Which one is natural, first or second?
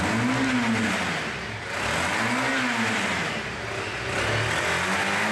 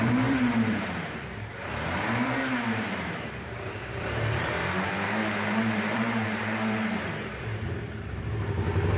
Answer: first